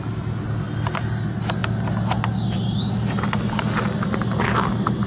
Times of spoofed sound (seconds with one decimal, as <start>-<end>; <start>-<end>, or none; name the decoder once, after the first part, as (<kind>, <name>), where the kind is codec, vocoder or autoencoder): none